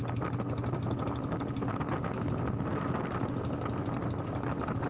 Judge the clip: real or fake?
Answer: real